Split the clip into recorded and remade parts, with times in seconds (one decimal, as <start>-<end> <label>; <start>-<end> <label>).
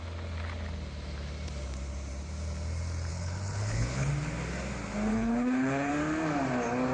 0.0-3.1 recorded; 3.1-4.1 remade; 4.1-5.1 recorded; 5.1-5.9 remade; 5.9-6.9 recorded